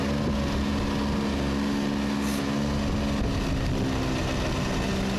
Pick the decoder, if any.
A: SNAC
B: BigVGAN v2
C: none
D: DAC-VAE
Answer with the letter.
C